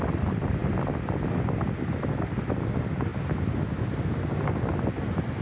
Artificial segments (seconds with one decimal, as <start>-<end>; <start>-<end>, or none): none